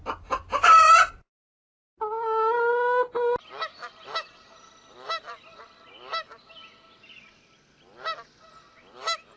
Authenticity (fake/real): real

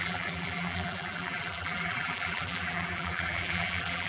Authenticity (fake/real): fake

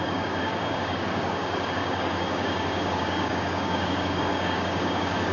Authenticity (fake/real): fake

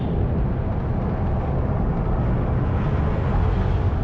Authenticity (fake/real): real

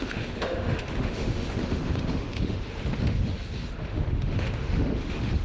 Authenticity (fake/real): fake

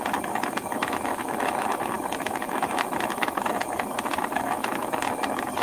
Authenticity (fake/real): fake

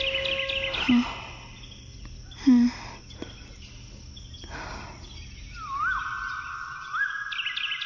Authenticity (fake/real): real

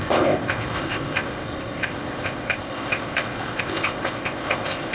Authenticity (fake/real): fake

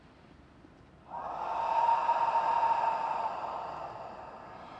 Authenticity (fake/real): real